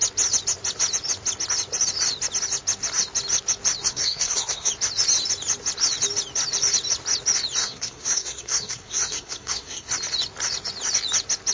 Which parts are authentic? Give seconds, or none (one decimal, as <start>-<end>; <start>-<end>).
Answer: 0.0-3.8; 4.7-7.6; 9.9-11.5